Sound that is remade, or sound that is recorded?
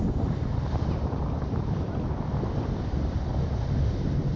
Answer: remade